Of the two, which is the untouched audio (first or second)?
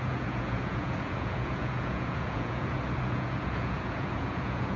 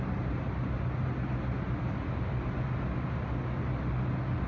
second